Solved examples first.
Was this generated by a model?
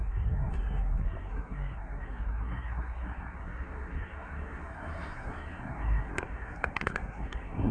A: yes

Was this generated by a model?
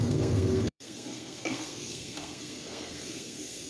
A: yes